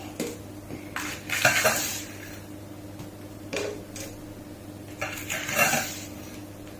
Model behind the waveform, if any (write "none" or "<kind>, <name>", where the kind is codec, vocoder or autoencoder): none